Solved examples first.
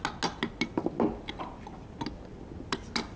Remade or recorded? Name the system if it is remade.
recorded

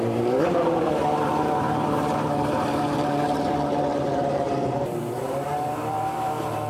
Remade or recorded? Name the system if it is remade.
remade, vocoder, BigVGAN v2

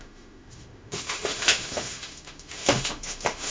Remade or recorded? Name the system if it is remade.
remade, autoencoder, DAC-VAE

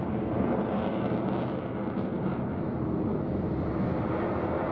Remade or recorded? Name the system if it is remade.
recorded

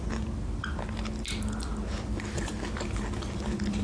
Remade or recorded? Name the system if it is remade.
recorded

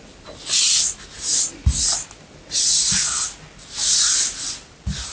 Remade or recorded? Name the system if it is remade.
recorded